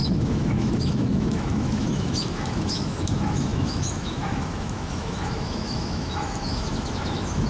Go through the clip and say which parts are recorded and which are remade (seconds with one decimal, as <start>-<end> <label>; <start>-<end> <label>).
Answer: 0.0-7.5 remade